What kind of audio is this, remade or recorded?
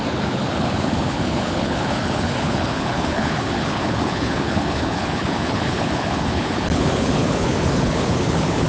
remade